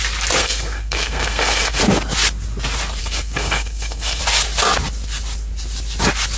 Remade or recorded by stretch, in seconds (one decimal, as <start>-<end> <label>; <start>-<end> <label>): 0.0-0.4 recorded; 0.4-1.8 remade; 1.8-3.0 recorded; 3.0-4.2 remade; 4.2-6.4 recorded